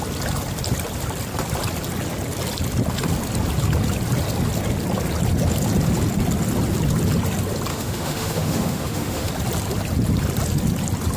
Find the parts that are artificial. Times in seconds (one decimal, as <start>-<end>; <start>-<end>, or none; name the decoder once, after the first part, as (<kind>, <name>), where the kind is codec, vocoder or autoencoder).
7.7-9.3 (autoencoder, DAC-VAE)